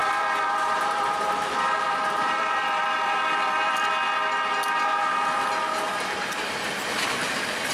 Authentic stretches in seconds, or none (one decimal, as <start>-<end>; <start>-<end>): 3.9-7.7

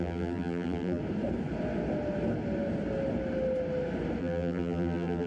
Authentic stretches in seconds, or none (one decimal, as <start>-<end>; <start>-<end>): 1.0-4.2

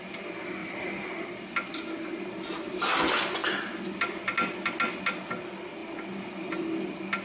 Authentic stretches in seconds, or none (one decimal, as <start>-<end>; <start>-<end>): 0.0-0.6; 1.8-3.4; 4.5-7.2

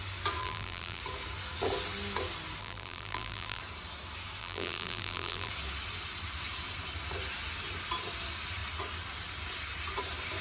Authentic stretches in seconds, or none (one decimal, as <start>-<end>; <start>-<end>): 0.0-0.4; 1.0-2.6; 3.6-4.4; 5.5-10.4

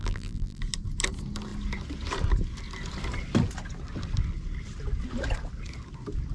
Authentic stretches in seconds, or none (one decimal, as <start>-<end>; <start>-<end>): 0.6-6.3